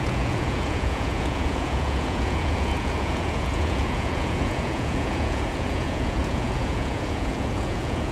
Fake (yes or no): yes